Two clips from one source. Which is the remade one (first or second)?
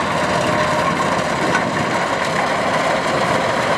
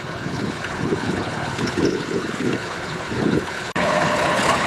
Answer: second